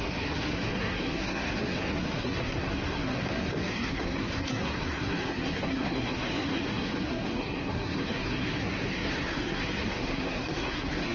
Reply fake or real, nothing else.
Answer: fake